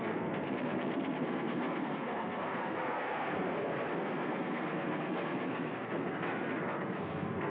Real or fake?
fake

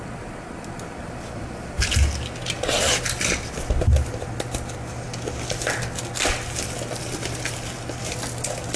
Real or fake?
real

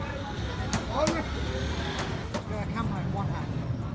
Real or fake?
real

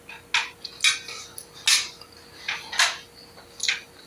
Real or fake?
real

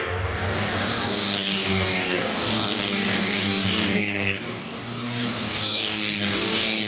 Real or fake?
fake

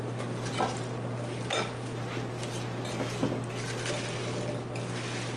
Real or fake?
real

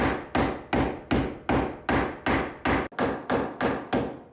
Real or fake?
real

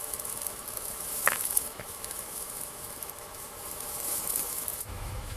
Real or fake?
fake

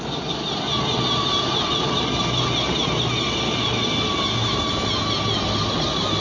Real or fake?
real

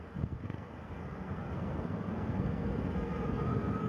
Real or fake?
fake